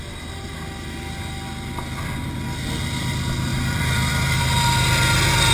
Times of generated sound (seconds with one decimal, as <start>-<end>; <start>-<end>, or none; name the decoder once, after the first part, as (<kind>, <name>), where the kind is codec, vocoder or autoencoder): 3.5-4.4 (vocoder, BigVGAN v2)